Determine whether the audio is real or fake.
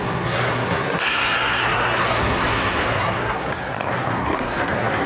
fake